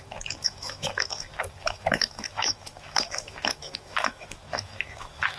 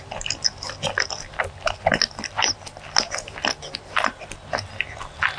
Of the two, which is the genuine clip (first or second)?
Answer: second